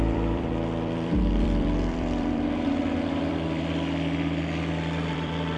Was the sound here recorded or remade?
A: remade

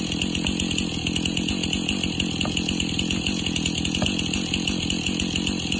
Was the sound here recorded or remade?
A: recorded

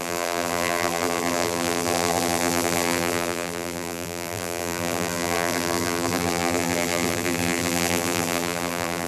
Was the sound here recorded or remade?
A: remade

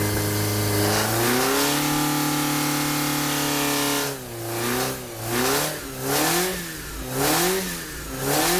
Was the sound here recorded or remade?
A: recorded